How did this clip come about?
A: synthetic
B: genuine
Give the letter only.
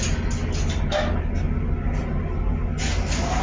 B